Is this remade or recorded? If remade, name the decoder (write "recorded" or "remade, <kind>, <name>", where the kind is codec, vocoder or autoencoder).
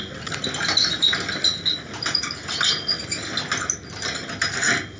recorded